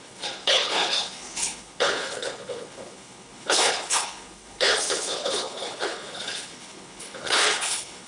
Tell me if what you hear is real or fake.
fake